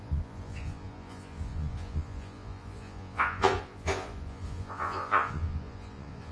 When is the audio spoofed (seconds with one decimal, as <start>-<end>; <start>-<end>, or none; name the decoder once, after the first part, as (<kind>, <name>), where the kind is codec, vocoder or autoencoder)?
0.0-6.3 (vocoder, Vocos)